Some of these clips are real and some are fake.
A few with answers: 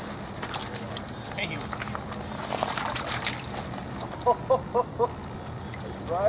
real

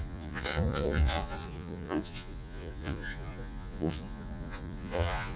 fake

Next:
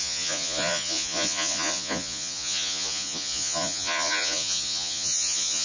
fake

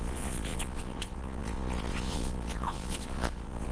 fake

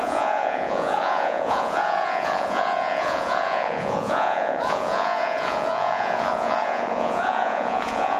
fake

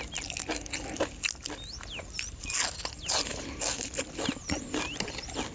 real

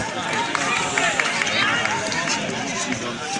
real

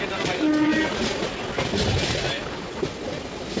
real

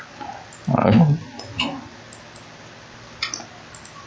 real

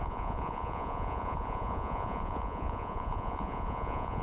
fake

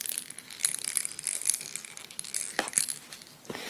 real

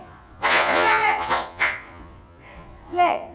fake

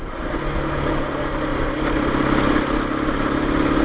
real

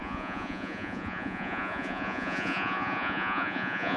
fake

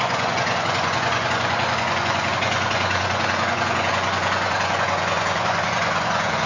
fake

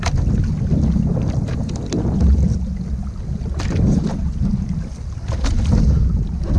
real